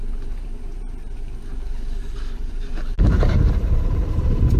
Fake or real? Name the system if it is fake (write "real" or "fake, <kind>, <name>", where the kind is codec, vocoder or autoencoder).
fake, vocoder, BigVGAN v2